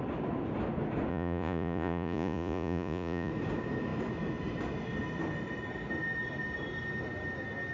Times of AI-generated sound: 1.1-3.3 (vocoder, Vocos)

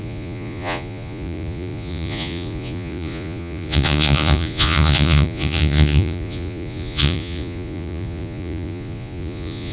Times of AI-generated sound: 0.0-9.7 (vocoder, Vocos)